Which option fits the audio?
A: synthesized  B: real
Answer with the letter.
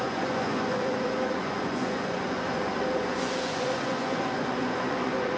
A